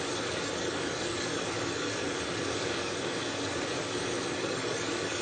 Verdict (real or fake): fake